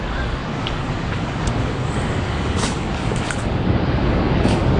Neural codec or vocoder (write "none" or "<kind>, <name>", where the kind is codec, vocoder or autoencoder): codec, DAC